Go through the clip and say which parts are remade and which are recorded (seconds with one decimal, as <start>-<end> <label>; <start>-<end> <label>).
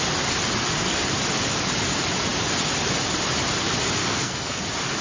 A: 0.0-4.0 recorded; 4.0-4.6 remade; 4.6-5.0 recorded